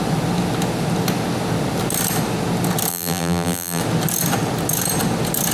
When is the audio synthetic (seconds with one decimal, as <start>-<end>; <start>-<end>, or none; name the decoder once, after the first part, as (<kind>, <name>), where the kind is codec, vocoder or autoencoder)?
2.9-3.8 (vocoder, BigVGAN v2)